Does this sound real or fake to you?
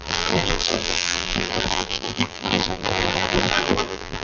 fake